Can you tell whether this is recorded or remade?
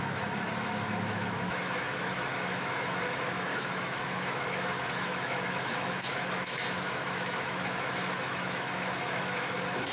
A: remade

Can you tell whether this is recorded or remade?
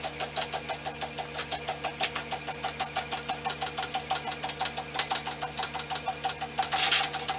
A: recorded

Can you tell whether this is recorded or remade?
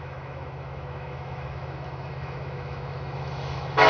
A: remade